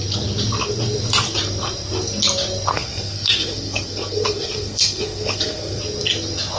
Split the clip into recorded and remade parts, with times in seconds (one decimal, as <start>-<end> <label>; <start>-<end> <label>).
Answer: 0.0-2.7 recorded; 2.7-5.8 remade; 5.8-6.6 recorded